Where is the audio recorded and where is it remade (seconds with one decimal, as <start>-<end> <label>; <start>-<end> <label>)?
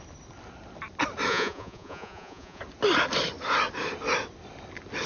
0.0-1.3 recorded; 1.3-2.6 remade; 2.6-5.1 recorded